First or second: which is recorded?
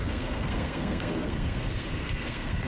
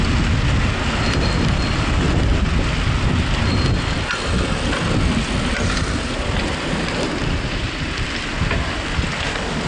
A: second